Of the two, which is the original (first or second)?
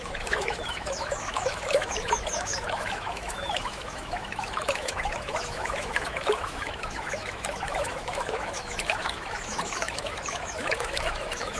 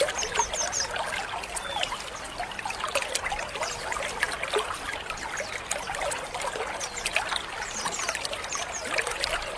second